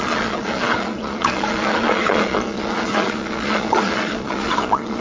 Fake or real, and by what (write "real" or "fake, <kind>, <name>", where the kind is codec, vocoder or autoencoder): fake, vocoder, Vocos